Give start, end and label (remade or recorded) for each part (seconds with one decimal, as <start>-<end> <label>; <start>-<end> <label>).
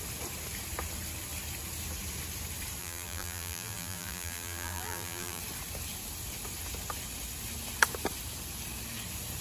0.0-2.8 recorded; 2.8-5.4 remade; 5.4-9.4 recorded